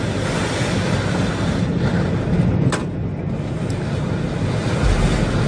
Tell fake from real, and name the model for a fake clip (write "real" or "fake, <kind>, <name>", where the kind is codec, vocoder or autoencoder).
real